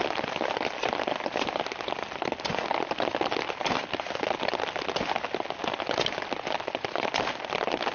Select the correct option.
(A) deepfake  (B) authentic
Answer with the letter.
B